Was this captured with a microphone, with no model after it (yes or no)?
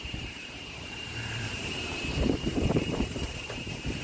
no